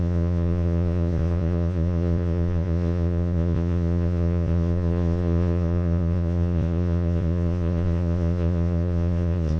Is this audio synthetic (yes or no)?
yes